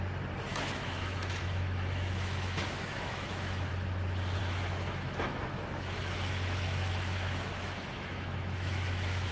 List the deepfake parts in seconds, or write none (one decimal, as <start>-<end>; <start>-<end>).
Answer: 0.5-3.7; 4.4-9.3